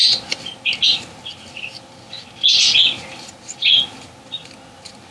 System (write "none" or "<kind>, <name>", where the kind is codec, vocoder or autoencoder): none